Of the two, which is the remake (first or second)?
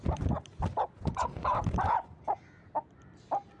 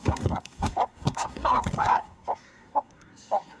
second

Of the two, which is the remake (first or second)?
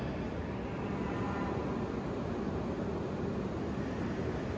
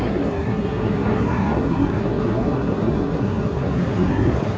second